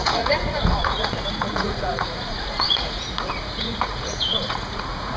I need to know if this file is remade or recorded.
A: remade